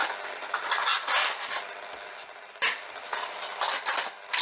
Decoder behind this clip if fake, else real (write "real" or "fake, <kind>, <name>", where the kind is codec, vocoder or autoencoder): real